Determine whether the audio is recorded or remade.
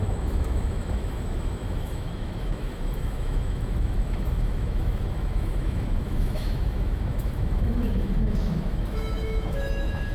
remade